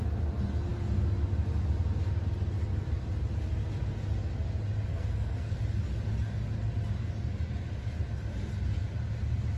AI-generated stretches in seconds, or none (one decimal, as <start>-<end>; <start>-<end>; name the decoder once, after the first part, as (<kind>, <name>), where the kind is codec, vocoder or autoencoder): 4.9-5.6 (codec, SNAC)

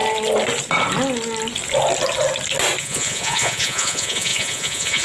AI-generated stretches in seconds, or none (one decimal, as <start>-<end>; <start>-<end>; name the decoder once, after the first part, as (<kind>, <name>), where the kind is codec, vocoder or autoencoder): 2.8-5.0 (vocoder, Vocos)

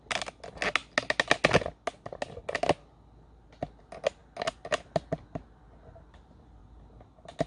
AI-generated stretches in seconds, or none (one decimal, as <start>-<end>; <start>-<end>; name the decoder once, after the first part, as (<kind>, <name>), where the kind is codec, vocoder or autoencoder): none

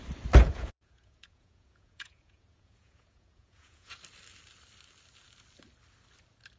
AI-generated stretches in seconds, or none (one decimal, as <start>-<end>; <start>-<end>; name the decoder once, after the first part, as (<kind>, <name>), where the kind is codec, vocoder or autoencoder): 0.4-4.0 (vocoder, Vocos)

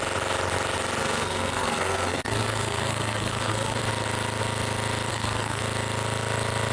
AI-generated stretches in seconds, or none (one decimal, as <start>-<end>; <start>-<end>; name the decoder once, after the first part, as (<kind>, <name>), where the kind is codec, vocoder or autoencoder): 1.0-3.8 (codec, SNAC); 5.1-5.6

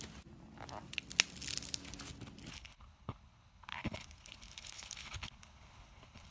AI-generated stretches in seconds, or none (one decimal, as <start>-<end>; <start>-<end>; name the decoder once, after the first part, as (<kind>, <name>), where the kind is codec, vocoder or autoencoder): 2.5-6.3 (codec, HILCodec)

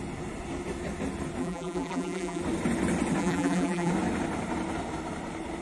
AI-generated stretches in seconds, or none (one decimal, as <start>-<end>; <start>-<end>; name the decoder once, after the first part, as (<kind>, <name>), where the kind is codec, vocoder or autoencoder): 1.4-2.4 (vocoder, BigVGAN v2); 3.2-3.9

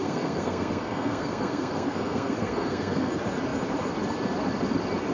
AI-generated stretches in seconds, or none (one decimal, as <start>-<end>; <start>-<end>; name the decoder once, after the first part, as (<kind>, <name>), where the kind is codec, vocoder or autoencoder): 0.0-3.1 (codec, SNAC)